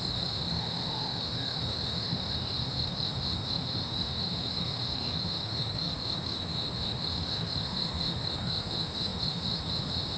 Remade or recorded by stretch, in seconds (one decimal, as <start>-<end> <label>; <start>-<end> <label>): 0.0-10.2 remade